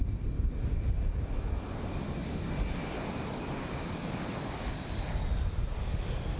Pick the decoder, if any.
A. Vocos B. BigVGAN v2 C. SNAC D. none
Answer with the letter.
D